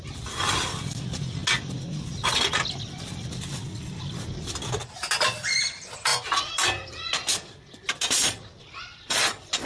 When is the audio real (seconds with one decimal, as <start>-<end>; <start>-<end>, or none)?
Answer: 0.0-9.7